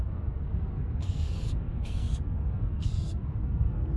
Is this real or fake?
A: fake